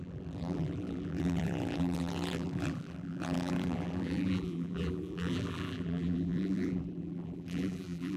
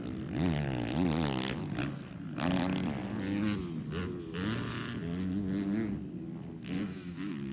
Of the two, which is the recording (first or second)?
second